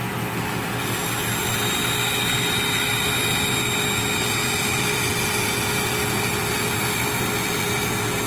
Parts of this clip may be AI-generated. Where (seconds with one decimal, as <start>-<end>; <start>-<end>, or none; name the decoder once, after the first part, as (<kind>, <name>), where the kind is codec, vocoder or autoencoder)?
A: none

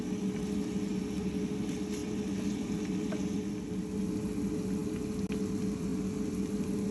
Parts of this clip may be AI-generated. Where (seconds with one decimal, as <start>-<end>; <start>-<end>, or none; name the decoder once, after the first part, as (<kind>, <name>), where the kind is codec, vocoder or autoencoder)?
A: 2.0-3.6 (vocoder, BigVGAN v2)

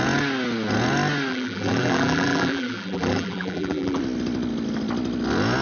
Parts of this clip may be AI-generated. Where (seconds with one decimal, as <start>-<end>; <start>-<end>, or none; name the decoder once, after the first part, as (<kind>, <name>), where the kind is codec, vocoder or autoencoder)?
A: 1.3-4.0 (vocoder, BigVGAN v2)

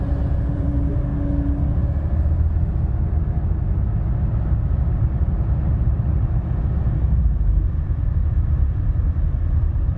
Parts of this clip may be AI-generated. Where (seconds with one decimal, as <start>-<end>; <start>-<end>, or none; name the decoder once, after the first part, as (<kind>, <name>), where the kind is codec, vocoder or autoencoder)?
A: 0.0-1.1 (vocoder, BigVGAN v2); 4.1-10.0